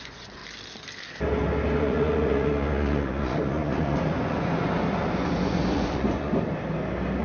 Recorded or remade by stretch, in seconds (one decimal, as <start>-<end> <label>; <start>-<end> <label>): 0.0-0.4 remade; 0.4-1.8 recorded; 1.8-6.3 remade; 6.3-7.2 recorded